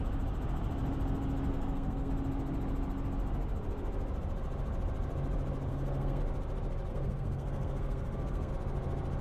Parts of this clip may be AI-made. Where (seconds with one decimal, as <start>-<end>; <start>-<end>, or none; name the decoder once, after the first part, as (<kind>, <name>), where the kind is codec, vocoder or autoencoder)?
1.5-2.1 (codec, SNAC); 5.7-6.2; 6.9-8.5